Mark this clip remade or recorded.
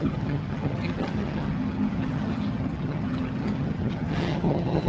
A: remade